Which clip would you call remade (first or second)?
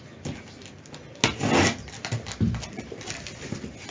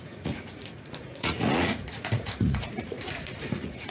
second